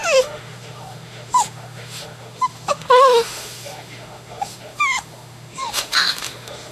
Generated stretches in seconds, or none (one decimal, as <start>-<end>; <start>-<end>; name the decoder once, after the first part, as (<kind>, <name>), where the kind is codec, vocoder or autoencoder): 0.0-6.7 (autoencoder, DAC-VAE)